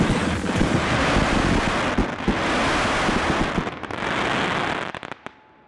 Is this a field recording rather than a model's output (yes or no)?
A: yes